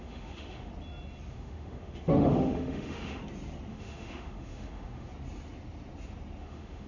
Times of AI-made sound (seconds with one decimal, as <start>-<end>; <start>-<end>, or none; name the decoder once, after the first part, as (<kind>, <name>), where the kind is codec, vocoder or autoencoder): 0.0-0.7 (autoencoder, DAC-VAE); 1.3-3.2; 3.7-5.1; 6.4-6.9